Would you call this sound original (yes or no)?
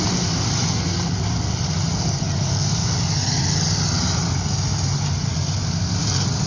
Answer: yes